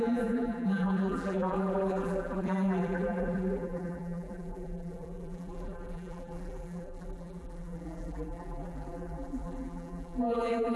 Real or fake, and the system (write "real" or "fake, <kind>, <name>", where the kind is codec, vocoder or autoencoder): fake, vocoder, BigVGAN v2